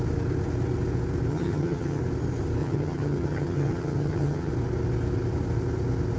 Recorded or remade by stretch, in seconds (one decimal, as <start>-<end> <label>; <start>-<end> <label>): 0.0-1.3 recorded; 1.3-2.0 remade; 2.0-2.6 recorded; 2.6-4.5 remade; 4.5-6.2 recorded